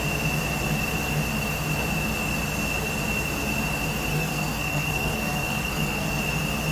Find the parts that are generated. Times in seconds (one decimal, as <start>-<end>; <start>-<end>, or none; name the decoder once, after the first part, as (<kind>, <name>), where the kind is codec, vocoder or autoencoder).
4.1-6.2 (codec, SNAC)